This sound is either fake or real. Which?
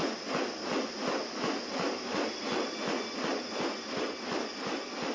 real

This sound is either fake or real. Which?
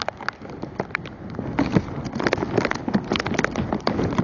real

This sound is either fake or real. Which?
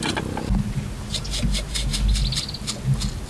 real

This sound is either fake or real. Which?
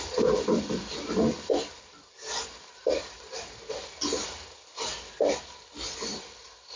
real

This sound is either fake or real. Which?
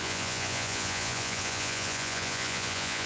fake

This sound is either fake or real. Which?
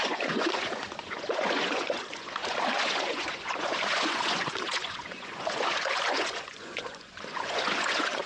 fake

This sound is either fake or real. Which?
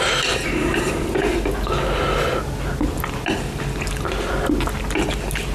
real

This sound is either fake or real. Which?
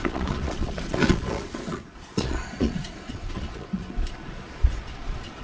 fake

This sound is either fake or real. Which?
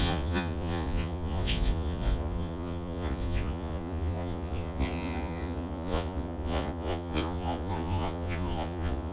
fake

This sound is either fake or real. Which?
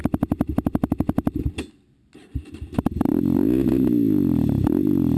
real